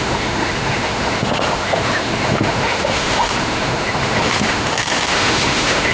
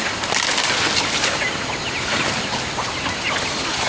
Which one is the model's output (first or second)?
first